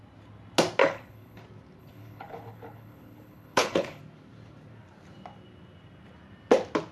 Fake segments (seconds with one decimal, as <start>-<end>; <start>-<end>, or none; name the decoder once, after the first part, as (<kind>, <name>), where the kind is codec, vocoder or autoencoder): 0.8-1.4 (codec, HILCodec); 1.8-4.0